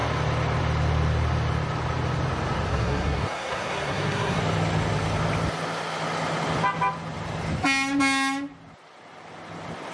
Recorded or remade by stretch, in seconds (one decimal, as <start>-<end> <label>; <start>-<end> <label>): 0.0-2.7 recorded; 2.7-4.4 remade; 4.4-9.9 recorded